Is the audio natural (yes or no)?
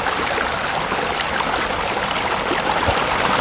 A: no